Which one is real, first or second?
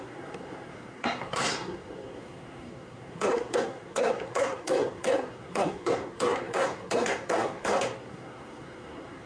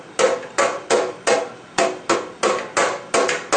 second